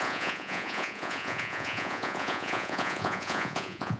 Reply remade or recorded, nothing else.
remade